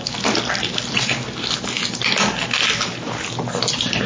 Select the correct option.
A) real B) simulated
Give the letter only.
A